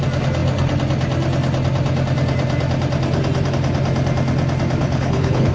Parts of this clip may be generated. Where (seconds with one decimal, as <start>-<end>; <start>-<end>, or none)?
4.8-5.5